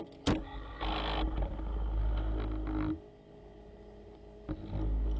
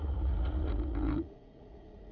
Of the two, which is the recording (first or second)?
first